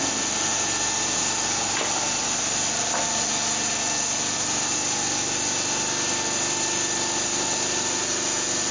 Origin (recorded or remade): recorded